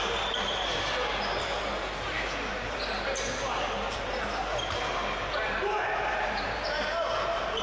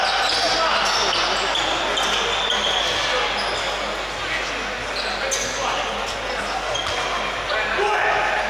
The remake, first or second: first